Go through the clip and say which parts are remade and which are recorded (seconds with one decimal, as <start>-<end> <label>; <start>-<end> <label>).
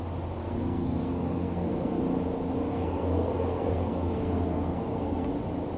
0.0-0.4 recorded; 0.4-2.0 remade; 2.0-2.7 recorded; 2.7-5.3 remade; 5.3-5.8 recorded